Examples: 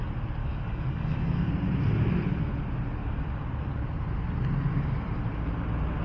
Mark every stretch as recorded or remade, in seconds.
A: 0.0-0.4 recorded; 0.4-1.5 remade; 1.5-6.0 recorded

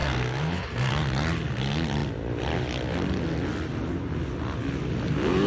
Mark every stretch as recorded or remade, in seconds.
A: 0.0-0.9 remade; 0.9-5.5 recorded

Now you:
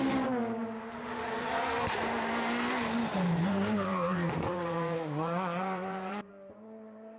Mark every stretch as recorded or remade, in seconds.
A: 0.0-3.1 recorded; 3.1-6.3 remade; 6.3-7.2 recorded

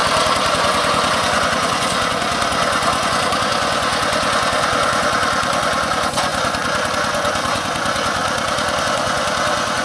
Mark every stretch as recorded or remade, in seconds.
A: 0.0-0.5 recorded; 0.5-8.2 remade; 8.2-8.8 recorded; 8.8-9.8 remade

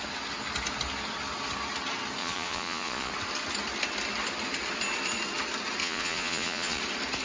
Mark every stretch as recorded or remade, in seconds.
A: 0.0-2.2 recorded; 2.2-3.1 remade; 3.1-5.8 recorded; 5.8-6.8 remade; 6.8-7.2 recorded

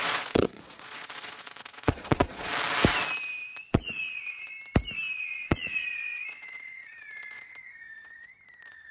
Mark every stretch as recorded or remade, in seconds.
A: 0.0-2.5 remade; 2.5-3.7 recorded; 3.7-4.5 remade; 4.5-5.1 recorded; 5.1-8.9 remade